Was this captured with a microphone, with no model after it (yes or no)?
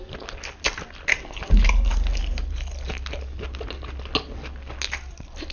yes